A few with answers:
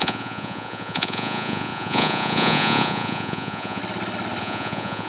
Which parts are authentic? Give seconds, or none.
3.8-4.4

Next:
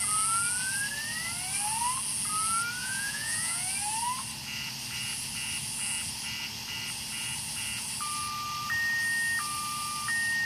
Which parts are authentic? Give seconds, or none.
0.0-2.8; 3.6-10.5

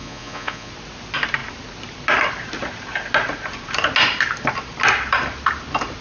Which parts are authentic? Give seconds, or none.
0.7-6.0

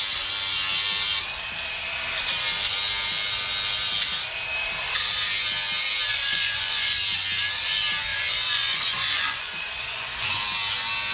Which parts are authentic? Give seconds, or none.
0.0-6.1; 7.0-8.1; 10.4-11.1

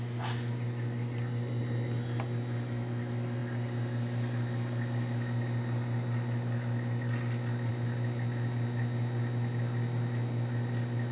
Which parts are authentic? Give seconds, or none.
0.0-11.1

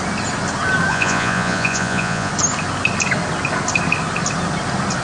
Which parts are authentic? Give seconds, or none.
0.0-0.9; 2.3-5.0

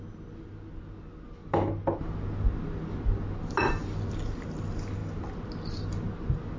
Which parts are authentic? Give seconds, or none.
0.0-6.6